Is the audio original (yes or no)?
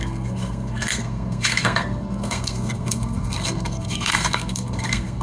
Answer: no